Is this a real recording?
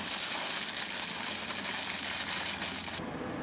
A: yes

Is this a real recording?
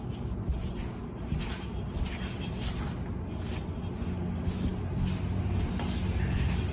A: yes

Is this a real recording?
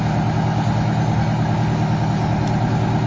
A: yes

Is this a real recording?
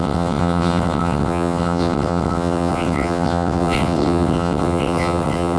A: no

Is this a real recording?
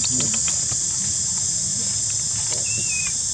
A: yes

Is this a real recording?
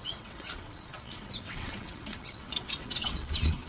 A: no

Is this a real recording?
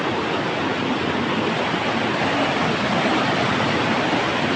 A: yes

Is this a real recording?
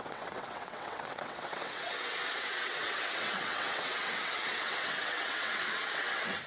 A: no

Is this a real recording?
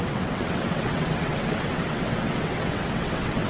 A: no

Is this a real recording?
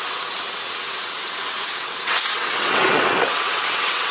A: no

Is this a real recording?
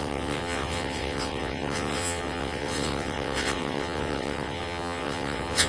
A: no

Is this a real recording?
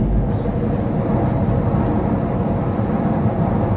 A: yes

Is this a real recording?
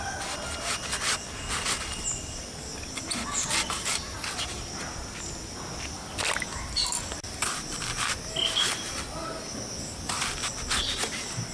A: yes